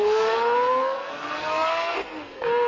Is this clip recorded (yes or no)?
no